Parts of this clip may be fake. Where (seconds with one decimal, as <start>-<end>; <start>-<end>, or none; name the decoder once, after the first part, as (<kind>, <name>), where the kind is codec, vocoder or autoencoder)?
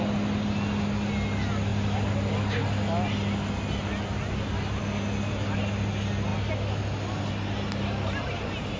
none